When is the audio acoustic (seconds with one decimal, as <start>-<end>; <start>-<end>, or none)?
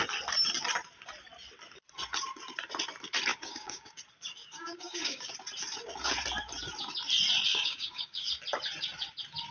0.0-3.3; 4.0-4.4; 5.3-7.5; 8.3-9.5